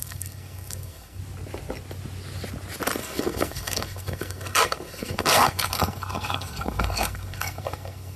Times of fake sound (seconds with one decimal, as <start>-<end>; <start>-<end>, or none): 0.0-1.2; 3.0-8.2